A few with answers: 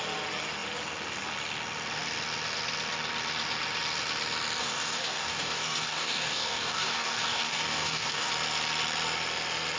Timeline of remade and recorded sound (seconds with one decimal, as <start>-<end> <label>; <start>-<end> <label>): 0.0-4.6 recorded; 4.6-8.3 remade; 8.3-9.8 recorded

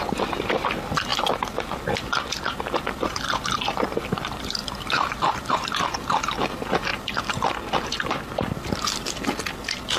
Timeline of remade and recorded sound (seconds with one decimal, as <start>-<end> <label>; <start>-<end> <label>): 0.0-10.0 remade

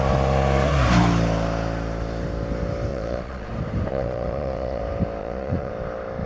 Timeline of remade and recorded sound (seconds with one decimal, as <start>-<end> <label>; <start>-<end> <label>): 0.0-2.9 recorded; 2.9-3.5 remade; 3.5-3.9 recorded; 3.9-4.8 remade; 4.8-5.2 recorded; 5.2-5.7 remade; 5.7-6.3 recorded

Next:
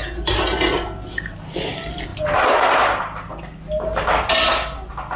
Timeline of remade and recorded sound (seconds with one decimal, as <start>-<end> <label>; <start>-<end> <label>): 0.0-5.2 recorded